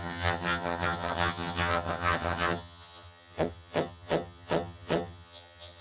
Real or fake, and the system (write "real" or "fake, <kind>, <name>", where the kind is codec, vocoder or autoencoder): fake, vocoder, HiFi-GAN